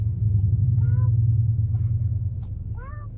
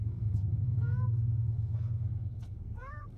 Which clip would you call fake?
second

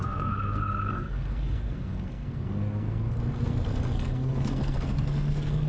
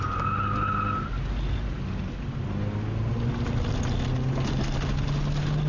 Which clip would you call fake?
first